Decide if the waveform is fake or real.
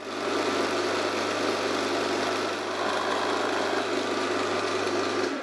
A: real